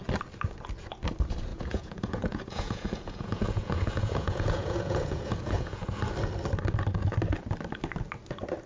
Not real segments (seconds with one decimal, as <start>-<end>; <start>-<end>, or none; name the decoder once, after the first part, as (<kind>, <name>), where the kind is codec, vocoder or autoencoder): 1.5-6.0 (vocoder, Vocos)